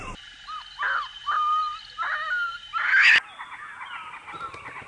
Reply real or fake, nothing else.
real